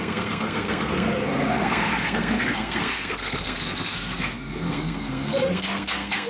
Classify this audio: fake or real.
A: fake